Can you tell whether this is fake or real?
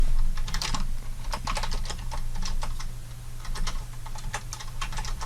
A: real